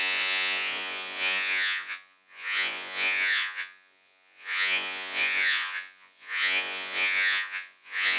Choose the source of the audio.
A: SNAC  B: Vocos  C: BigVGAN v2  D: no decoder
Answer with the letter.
B